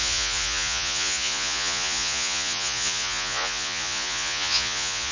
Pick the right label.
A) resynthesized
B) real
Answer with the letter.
A